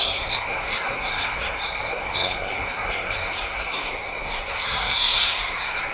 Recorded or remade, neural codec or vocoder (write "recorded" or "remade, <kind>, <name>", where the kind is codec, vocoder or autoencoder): remade, codec, SNAC